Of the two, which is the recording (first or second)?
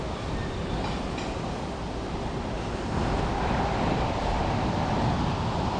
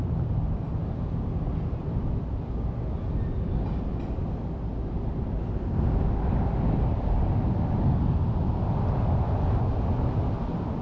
second